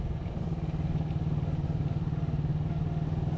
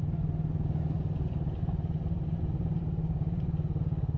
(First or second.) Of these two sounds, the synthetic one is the second